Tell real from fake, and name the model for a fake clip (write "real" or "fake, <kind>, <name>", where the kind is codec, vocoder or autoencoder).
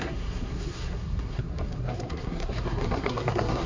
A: fake, codec, SNAC